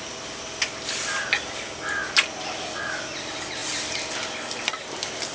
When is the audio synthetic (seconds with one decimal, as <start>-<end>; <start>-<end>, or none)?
none